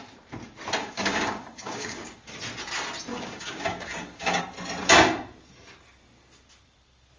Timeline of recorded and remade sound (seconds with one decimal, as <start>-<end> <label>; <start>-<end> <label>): 0.0-0.8 recorded; 0.8-2.2 remade; 2.2-3.1 recorded; 3.1-4.4 remade; 4.4-7.2 recorded